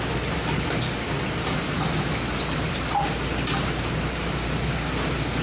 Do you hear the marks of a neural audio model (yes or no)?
no